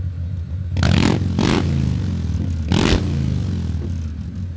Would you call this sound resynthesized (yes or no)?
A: no